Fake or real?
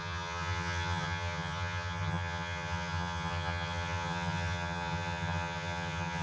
fake